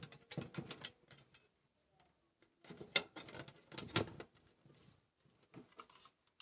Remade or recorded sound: recorded